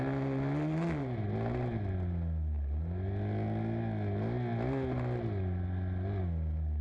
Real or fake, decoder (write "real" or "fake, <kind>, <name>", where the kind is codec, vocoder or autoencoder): real